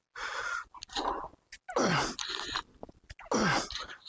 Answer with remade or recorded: recorded